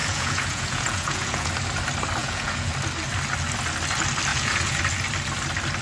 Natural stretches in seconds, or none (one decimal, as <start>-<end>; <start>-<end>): 1.5-2.2; 2.7-4.3; 4.8-5.8